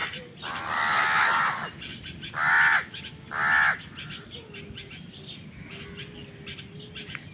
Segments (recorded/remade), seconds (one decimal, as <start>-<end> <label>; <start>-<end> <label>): 0.0-0.6 remade; 0.6-7.3 recorded